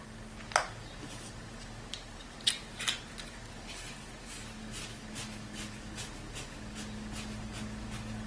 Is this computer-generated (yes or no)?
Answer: no